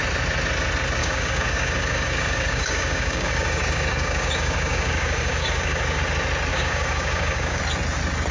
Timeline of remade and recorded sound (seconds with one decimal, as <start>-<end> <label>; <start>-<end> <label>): 0.0-1.0 recorded; 1.0-6.0 remade; 6.0-6.5 recorded; 6.5-7.6 remade; 7.6-8.3 recorded